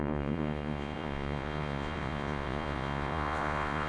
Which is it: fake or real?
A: fake